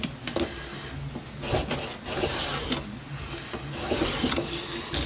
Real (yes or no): yes